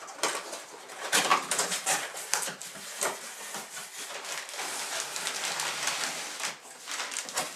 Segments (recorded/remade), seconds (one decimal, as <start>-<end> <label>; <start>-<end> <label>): 0.0-1.3 recorded; 1.3-2.6 remade; 2.6-7.6 recorded